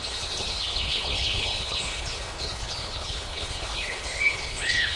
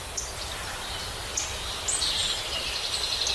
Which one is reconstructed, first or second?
first